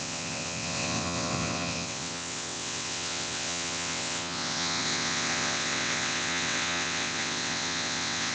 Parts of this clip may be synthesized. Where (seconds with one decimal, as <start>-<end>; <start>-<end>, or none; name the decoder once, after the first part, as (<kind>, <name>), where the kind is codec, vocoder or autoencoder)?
0.0-8.3 (vocoder, WaveNeXt)